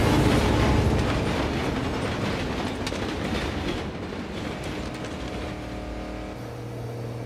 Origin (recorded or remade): recorded